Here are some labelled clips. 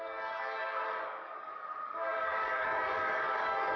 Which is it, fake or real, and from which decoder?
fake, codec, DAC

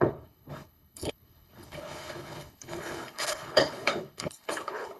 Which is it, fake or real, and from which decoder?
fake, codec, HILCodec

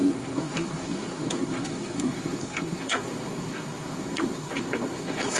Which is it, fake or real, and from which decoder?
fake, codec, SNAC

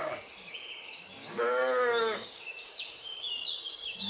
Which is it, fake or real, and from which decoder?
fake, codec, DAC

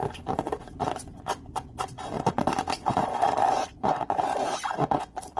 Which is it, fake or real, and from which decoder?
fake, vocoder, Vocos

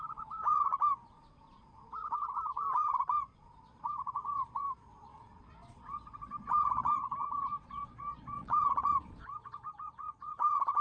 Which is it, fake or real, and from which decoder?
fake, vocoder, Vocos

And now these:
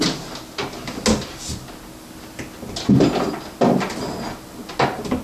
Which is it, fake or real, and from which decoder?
real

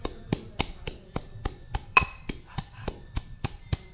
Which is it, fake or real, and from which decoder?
fake, vocoder, BigVGAN v2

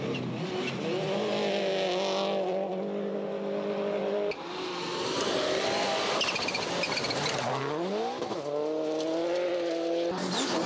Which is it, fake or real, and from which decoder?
real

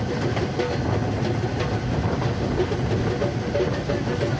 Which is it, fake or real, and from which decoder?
real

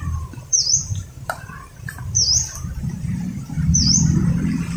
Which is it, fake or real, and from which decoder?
fake, vocoder, BigVGAN v2